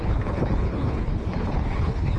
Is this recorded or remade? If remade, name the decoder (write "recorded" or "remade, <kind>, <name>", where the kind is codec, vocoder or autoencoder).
remade, codec, HILCodec